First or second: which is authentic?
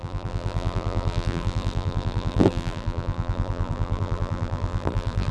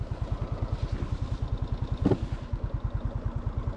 second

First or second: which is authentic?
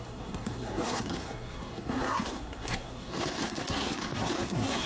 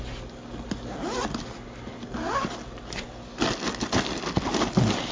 second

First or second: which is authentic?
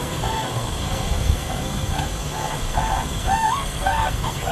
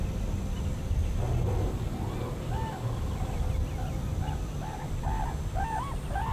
second